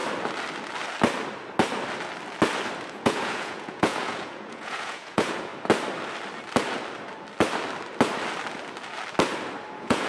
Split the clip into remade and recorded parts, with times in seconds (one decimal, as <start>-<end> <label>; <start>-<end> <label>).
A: 0.0-2.9 recorded; 2.9-5.5 remade; 5.5-9.7 recorded; 9.7-10.1 remade